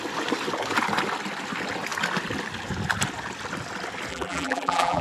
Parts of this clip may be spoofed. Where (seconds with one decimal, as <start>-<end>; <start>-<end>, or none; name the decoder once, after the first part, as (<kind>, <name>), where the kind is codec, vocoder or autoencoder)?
4.1-5.0 (vocoder, BigVGAN v2)